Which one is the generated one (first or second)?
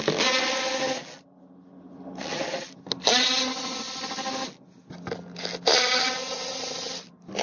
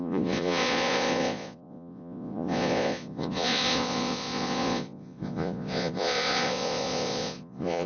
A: second